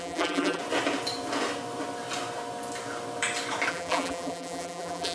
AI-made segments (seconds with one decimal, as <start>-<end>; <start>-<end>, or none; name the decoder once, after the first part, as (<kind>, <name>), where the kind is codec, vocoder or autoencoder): 0.0-0.6 (vocoder, BigVGAN v2); 3.7-5.1

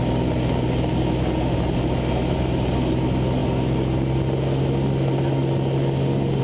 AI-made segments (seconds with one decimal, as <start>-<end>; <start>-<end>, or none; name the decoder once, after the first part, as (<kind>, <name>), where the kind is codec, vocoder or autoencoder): none